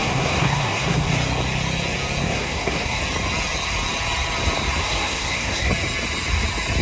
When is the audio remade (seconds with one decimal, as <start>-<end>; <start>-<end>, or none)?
0.0-1.1; 2.2-3.0; 4.8-5.7